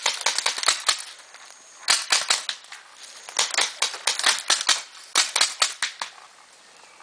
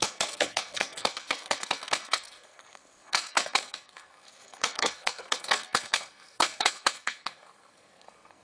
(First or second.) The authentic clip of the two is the first